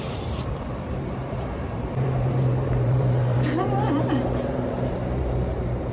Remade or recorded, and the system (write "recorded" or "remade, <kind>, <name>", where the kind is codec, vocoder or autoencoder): remade, vocoder, BigVGAN v2